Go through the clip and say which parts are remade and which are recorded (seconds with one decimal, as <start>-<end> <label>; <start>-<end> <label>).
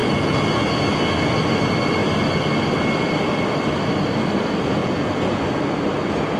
0.0-4.8 recorded; 4.8-5.4 remade; 5.4-6.4 recorded